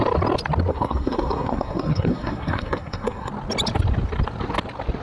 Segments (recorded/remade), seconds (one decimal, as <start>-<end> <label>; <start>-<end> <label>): 0.0-0.7 recorded; 0.7-3.3 remade; 3.3-5.0 recorded